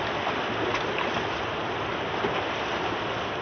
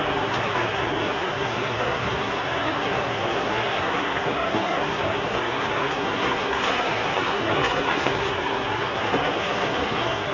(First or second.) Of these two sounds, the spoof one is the second